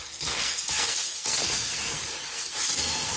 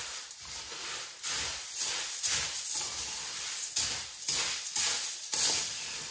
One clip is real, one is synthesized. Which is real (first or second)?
second